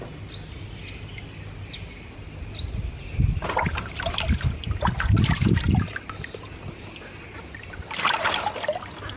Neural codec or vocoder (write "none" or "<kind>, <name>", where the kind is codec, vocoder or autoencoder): none